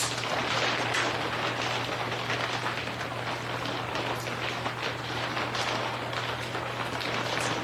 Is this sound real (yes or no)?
yes